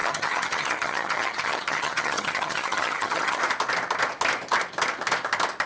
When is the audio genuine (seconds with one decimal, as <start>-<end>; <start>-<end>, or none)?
3.4-5.7